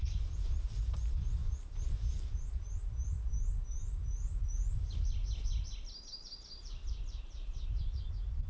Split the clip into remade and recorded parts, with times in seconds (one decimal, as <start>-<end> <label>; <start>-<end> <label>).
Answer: 0.0-5.2 remade; 5.2-7.0 recorded; 7.0-8.5 remade